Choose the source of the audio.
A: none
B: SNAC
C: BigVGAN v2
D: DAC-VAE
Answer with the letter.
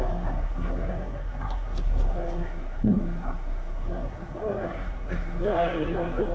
B